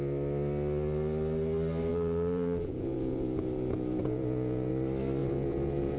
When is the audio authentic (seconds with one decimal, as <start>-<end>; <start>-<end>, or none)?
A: 0.0-1.9; 4.7-5.2